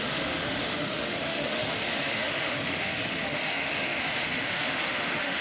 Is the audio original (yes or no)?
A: no